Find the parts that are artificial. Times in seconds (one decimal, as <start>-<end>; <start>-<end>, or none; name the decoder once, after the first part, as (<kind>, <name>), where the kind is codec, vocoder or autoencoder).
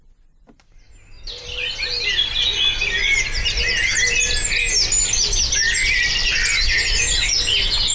none